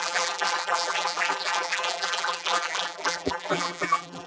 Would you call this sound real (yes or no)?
no